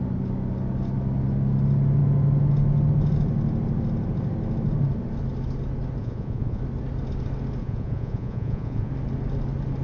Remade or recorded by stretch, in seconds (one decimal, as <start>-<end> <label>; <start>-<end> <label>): 0.0-6.0 recorded; 6.0-6.6 remade; 6.6-7.6 recorded; 7.6-8.9 remade; 8.9-9.8 recorded